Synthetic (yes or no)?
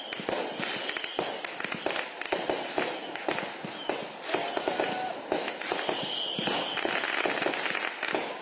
no